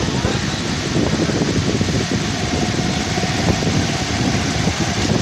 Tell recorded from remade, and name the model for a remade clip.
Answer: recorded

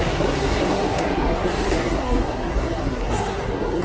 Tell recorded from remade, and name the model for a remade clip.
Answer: remade, codec, SNAC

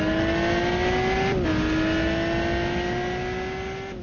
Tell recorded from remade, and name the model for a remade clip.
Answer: recorded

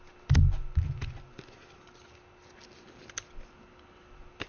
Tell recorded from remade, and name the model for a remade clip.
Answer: recorded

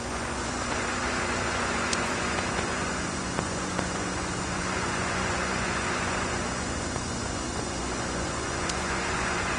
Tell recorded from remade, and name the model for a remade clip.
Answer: remade, vocoder, Vocos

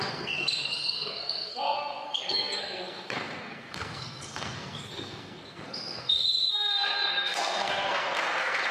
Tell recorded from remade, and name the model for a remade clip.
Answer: remade, codec, SNAC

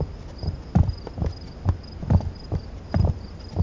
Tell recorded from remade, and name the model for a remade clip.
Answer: recorded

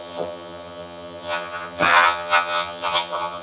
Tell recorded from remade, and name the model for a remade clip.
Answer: remade, vocoder, HiFi-GAN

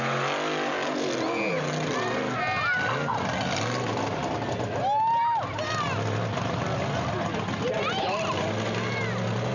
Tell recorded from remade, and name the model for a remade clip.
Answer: recorded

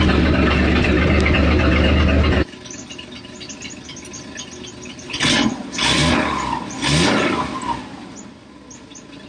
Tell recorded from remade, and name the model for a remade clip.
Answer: recorded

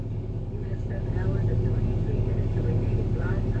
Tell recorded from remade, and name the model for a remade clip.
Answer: remade, codec, DAC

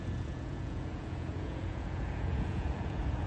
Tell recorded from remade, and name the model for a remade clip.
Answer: remade, vocoder, Vocos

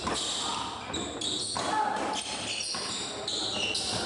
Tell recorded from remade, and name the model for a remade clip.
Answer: recorded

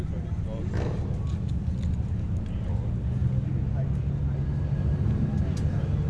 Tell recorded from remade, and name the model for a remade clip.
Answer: recorded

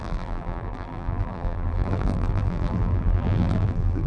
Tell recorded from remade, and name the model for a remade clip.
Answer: remade, vocoder, BigVGAN v2